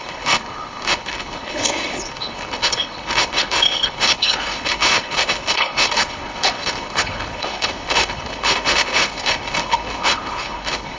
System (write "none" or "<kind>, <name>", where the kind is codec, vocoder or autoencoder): codec, HILCodec